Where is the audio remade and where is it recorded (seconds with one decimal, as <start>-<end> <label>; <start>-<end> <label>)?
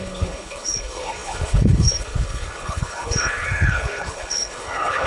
0.0-5.1 remade